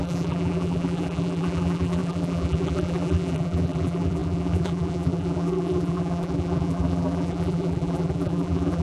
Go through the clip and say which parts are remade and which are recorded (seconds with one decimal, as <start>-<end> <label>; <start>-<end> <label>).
0.0-8.8 remade